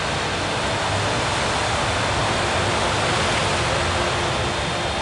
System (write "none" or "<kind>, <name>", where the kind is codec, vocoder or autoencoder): none